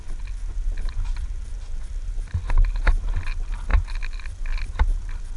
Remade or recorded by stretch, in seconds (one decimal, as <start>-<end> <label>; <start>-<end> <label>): 0.0-5.4 recorded